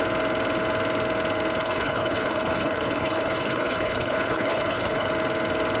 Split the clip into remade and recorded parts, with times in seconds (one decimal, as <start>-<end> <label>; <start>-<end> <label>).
0.0-1.6 recorded; 1.6-5.1 remade; 5.1-5.8 recorded